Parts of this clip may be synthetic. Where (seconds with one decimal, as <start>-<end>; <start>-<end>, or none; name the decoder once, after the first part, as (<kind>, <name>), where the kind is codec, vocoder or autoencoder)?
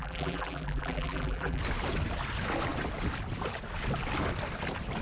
0.0-1.6 (vocoder, BigVGAN v2)